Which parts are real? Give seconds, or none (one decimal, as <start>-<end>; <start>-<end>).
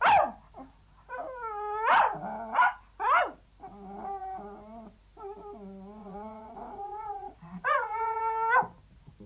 0.0-6.0; 8.2-9.3